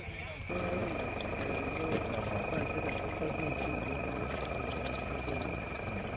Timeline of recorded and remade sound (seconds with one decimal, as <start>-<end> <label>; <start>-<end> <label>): 0.0-3.5 recorded; 3.5-5.8 remade; 5.8-6.2 recorded